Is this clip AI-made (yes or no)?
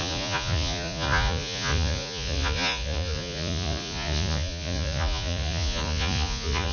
yes